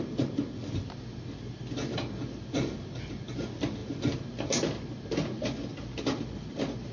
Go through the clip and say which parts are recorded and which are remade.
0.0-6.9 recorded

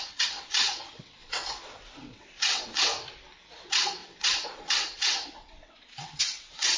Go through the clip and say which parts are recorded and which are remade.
0.0-2.9 remade; 2.9-3.6 recorded; 3.6-6.8 remade

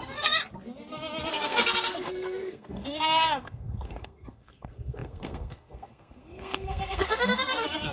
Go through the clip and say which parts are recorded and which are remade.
0.0-0.4 remade; 0.4-1.3 recorded; 1.3-7.9 remade

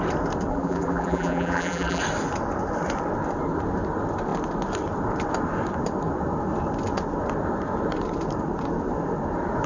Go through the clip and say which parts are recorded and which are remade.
0.0-0.5 recorded; 0.5-2.0 remade; 2.0-9.7 recorded

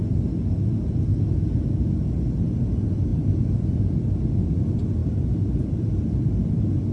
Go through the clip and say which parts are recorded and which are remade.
0.0-3.1 recorded; 3.1-3.8 remade; 3.8-5.0 recorded; 5.0-6.3 remade; 6.3-6.9 recorded

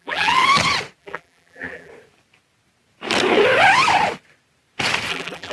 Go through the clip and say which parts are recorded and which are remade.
0.0-0.4 remade; 0.4-1.0 recorded; 1.0-1.9 remade; 1.9-5.1 recorded; 5.1-5.5 remade

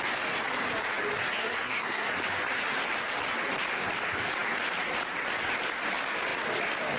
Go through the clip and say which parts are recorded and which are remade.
0.0-1.4 recorded; 1.4-2.1 remade; 2.1-7.0 recorded